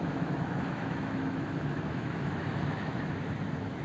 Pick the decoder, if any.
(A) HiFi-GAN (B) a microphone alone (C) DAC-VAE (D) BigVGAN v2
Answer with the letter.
C